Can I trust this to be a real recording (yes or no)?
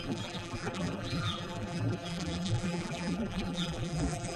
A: no